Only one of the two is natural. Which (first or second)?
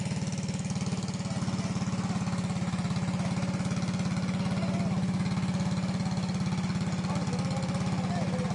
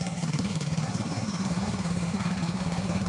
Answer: first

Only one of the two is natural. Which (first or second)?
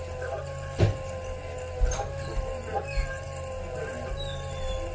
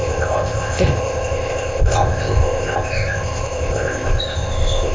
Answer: first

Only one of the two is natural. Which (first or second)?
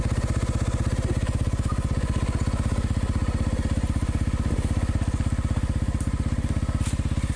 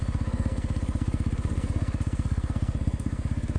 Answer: first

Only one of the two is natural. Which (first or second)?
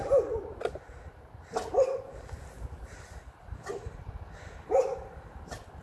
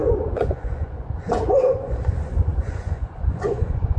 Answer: first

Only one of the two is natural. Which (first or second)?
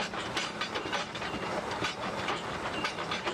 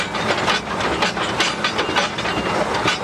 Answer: second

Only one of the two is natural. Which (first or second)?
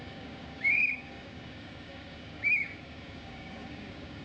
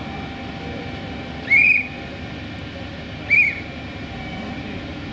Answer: second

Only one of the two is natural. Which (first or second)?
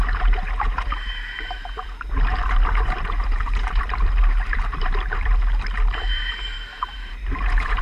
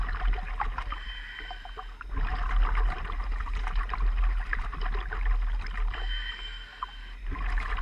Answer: second